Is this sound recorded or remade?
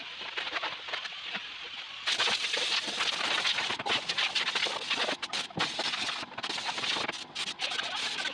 recorded